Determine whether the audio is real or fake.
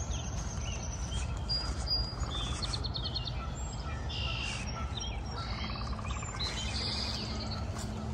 real